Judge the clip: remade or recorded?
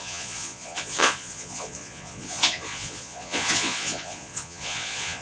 remade